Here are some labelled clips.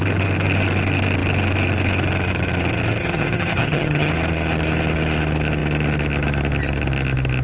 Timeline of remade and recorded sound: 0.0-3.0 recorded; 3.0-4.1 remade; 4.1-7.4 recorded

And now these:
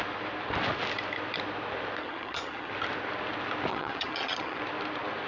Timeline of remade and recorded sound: 0.0-2.0 recorded; 2.0-2.7 remade; 2.7-3.7 recorded; 3.7-4.6 remade; 4.6-5.3 recorded

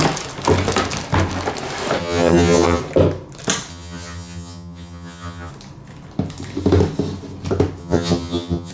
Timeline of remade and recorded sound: 0.0-2.0 recorded; 2.0-2.8 remade; 2.8-3.7 recorded; 3.7-5.5 remade; 5.5-7.8 recorded; 7.8-8.7 remade

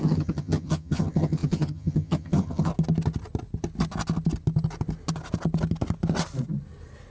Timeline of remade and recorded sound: 0.0-2.7 remade; 2.7-7.1 recorded